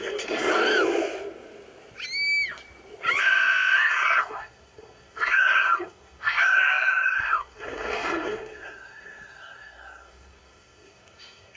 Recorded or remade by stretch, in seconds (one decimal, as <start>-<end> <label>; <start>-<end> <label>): 0.0-0.5 remade; 0.5-3.2 recorded; 3.2-11.6 remade

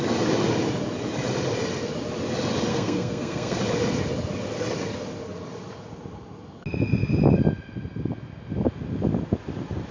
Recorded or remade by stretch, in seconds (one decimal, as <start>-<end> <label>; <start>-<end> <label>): 0.0-2.7 recorded; 2.7-3.6 remade; 3.6-9.9 recorded

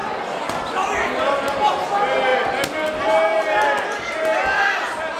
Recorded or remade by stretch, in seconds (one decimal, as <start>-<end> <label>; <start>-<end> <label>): 0.0-5.2 recorded

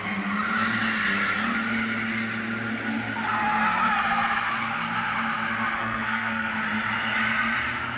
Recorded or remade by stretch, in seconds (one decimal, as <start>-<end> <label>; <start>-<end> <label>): 0.0-5.8 recorded; 5.8-6.5 remade; 6.5-8.0 recorded

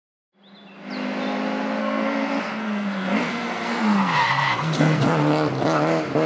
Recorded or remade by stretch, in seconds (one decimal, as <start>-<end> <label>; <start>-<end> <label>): 0.0-1.8 recorded; 1.8-5.0 remade; 5.0-6.3 recorded